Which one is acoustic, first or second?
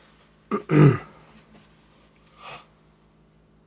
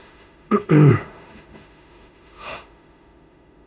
first